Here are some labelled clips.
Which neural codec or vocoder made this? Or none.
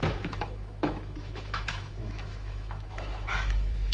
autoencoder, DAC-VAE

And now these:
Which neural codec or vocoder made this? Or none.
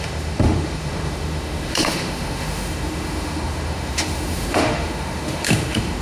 autoencoder, DAC-VAE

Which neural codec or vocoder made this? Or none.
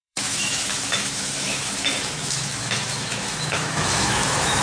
autoencoder, DAC-VAE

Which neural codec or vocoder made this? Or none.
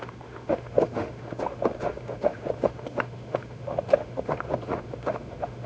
autoencoder, DAC-VAE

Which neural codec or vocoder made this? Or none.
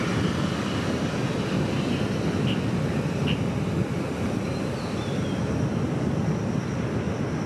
none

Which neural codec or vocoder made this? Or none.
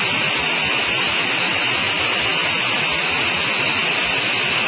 none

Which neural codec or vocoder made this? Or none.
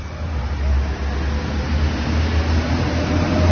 none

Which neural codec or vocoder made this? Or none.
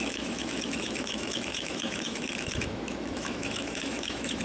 autoencoder, DAC-VAE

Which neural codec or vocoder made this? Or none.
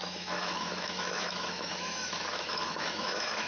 autoencoder, DAC-VAE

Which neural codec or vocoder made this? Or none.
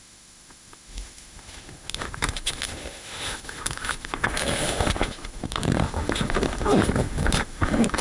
autoencoder, DAC-VAE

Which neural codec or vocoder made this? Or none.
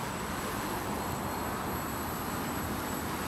none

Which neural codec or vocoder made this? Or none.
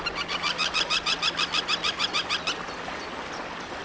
none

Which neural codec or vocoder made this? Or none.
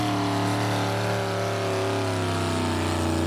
none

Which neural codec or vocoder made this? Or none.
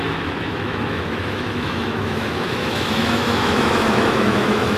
autoencoder, DAC-VAE